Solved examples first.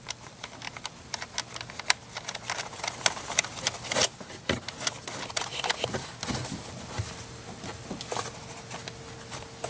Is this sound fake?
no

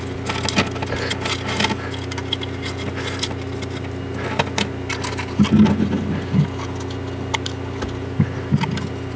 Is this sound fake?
no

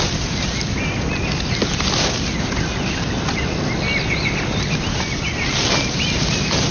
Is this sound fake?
no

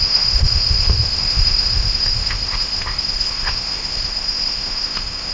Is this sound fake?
yes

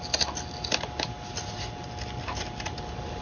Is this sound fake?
no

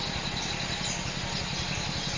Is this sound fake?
no